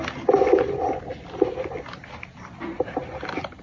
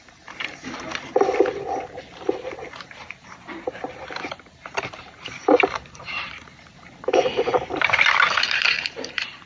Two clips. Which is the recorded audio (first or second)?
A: first